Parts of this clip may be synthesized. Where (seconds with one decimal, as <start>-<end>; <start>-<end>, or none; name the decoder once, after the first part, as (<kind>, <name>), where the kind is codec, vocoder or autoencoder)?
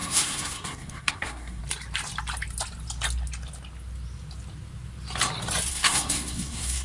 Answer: 0.0-1.6 (codec, SNAC); 5.7-6.8